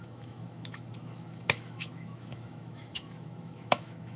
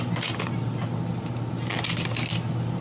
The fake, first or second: first